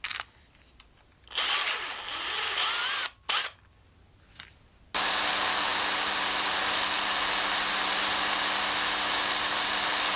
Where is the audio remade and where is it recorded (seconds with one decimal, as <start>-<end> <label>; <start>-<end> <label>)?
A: 0.0-10.2 recorded